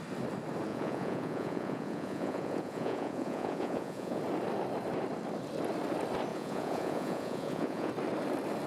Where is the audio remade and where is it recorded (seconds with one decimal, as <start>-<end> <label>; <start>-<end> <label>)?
0.0-0.7 recorded; 0.7-4.2 remade; 4.2-6.3 recorded; 6.3-7.9 remade; 7.9-8.7 recorded